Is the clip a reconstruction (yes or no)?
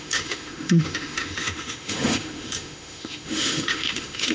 yes